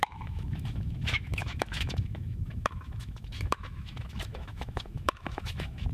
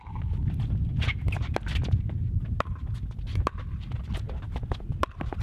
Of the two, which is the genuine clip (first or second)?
second